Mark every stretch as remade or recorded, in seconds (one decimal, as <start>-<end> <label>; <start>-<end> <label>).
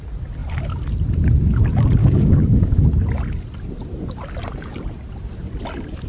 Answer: 0.0-2.0 recorded; 2.0-2.8 remade; 2.8-6.1 recorded